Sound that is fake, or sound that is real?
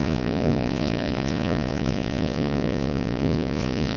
fake